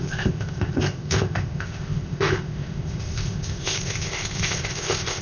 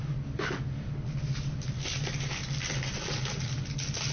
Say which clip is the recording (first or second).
second